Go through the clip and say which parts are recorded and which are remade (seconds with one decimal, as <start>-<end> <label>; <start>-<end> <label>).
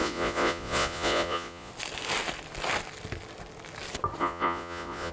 0.0-1.7 remade; 1.7-4.2 recorded; 4.2-5.1 remade